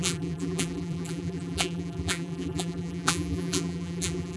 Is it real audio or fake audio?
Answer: fake